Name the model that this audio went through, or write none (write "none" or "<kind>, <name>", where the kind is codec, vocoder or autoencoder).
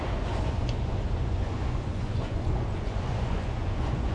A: vocoder, Vocos